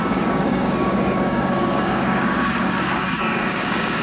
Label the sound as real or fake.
fake